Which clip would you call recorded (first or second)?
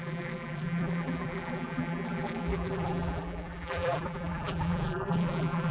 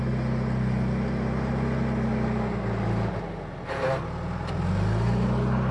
second